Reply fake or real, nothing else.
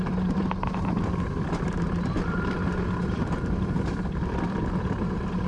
fake